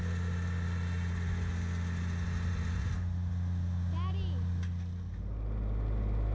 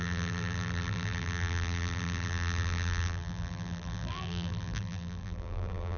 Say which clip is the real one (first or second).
first